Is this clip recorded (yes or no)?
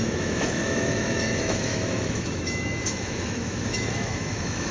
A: no